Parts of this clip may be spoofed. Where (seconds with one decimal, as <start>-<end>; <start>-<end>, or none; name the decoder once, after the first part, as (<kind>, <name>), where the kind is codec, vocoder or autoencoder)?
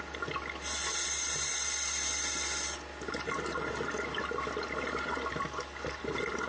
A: none